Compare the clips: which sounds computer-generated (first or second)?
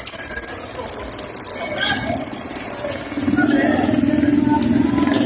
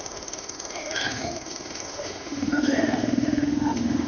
second